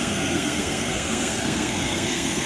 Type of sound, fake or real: fake